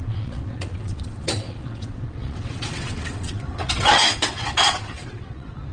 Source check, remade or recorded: remade